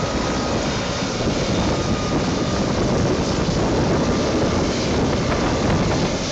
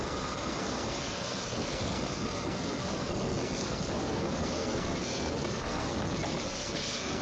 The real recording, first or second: first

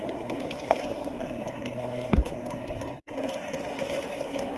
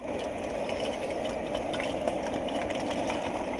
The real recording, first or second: second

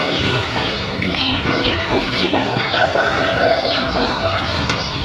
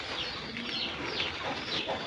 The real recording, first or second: second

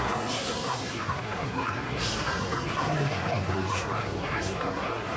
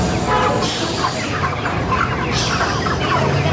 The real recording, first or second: second